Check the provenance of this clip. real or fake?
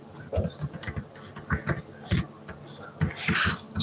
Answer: real